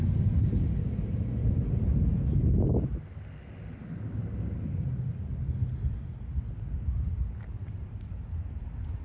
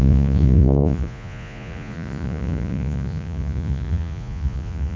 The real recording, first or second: first